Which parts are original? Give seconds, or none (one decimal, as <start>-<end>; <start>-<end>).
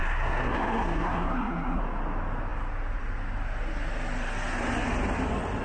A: 1.8-5.6